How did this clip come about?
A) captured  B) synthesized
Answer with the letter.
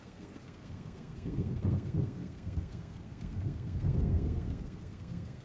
B